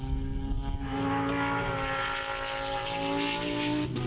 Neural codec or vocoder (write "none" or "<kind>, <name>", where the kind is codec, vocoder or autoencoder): none